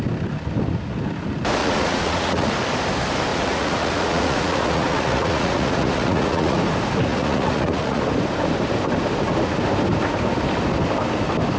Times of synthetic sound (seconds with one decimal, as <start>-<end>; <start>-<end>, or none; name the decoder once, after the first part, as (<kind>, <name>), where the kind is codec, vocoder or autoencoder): 1.6-2.5 (vocoder, Vocos); 3.3-6.6; 7.1-8.0